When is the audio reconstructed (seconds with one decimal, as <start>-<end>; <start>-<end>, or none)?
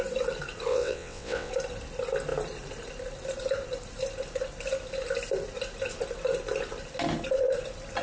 0.7-1.5